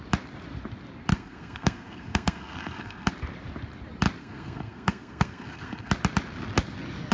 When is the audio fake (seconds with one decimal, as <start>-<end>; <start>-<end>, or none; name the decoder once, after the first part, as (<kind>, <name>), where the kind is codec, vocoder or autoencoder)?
1.1-3.1 (codec, SNAC); 4.2-5.9